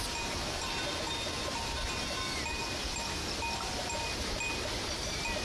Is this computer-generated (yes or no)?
no